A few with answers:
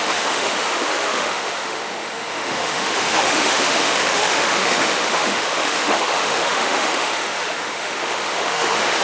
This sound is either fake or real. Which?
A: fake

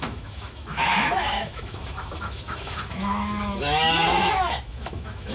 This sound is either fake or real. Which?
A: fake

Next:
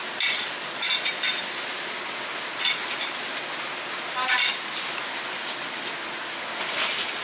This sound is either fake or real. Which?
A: real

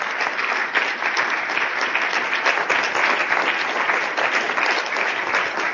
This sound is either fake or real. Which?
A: real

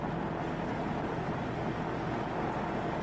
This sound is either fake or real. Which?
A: real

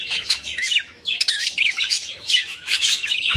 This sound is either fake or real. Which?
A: fake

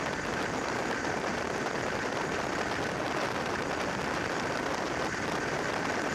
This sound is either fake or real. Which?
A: real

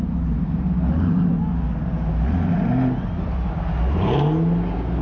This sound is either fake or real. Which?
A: real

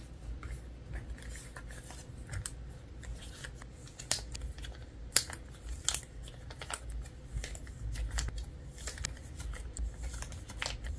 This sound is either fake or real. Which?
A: real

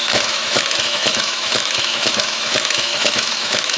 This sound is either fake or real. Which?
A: fake